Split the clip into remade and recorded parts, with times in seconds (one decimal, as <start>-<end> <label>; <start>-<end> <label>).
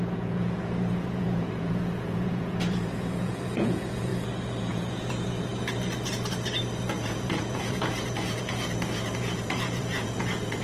0.0-4.1 remade; 4.1-4.6 recorded; 4.6-5.5 remade; 5.5-6.6 recorded; 6.6-10.6 remade